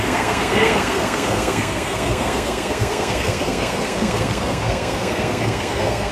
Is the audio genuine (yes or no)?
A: no